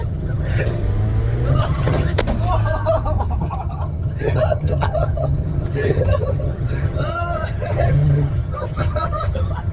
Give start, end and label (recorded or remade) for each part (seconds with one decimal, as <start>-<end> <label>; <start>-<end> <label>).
0.0-0.8 remade; 0.8-1.5 recorded; 1.5-2.2 remade; 2.2-3.4 recorded; 3.4-9.7 remade